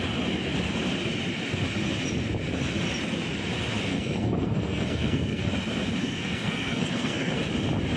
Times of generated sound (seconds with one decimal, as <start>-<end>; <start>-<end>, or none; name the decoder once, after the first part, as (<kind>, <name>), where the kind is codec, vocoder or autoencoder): 3.9-5.5 (codec, SNAC); 6.0-7.4

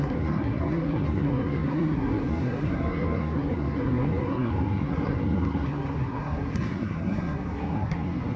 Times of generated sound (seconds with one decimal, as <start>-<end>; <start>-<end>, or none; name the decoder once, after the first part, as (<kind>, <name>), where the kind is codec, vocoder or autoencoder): 0.0-8.4 (codec, SNAC)

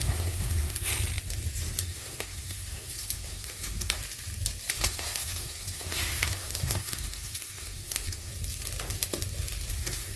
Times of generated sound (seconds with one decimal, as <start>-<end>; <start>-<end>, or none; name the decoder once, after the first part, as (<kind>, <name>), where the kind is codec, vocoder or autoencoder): 0.0-0.9 (codec, SNAC); 1.8-4.0; 4.7-8.3; 9.7-10.2

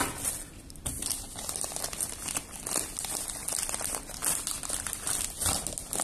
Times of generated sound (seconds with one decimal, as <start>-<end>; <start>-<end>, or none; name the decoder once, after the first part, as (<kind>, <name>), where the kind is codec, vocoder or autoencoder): none

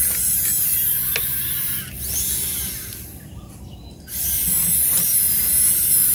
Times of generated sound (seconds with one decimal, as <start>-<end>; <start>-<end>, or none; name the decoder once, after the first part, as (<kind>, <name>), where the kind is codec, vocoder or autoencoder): none